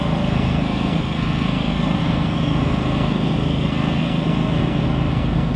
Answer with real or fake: fake